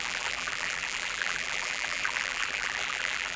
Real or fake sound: fake